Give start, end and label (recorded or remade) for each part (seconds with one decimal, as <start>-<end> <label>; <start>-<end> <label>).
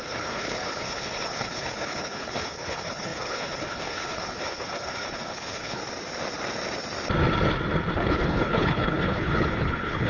0.0-5.8 remade; 5.8-7.9 recorded; 7.9-10.1 remade